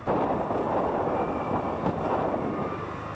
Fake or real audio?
real